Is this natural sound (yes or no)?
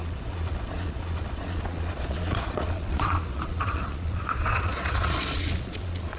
no